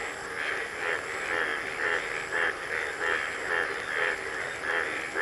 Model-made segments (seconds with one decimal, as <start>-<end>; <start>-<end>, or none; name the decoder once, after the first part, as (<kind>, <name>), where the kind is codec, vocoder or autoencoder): none